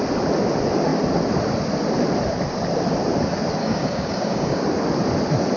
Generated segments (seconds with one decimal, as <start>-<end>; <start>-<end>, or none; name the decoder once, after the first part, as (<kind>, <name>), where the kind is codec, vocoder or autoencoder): 3.6-4.6 (codec, DAC)